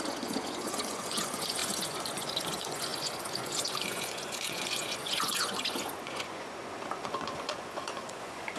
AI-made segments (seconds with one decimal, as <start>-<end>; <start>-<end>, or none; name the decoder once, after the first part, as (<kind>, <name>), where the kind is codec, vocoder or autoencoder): 0.0-8.6 (vocoder, Vocos)